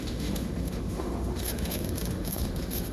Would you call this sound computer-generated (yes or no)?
yes